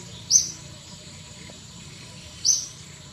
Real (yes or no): no